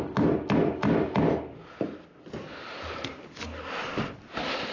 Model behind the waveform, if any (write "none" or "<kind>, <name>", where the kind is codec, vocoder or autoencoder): none